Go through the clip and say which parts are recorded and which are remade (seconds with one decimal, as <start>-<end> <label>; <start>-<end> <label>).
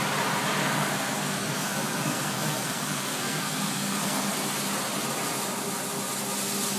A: 0.0-0.6 recorded; 0.6-4.3 remade; 4.3-6.8 recorded